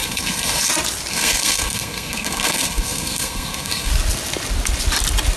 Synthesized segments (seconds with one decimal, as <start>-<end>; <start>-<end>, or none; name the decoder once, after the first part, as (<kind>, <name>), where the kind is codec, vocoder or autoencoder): 0.0-0.7 (codec, SNAC); 1.1-3.9